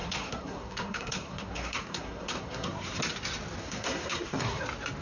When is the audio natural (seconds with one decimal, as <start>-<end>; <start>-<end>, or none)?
3.0-3.6; 4.6-5.0